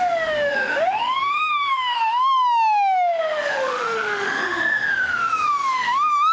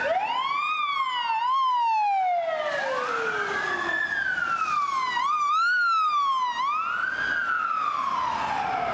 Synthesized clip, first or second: first